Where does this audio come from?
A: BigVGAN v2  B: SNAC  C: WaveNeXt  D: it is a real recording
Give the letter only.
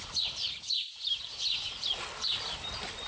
A